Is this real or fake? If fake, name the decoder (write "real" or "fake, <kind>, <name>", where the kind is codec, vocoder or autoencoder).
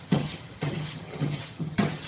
fake, vocoder, HiFi-GAN